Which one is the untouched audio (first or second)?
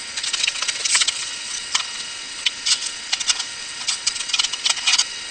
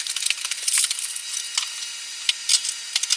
second